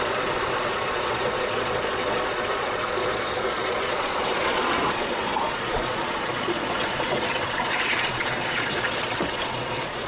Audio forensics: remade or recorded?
remade